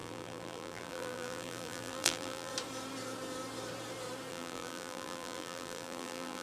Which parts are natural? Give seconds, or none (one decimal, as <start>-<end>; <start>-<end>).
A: 2.5-4.3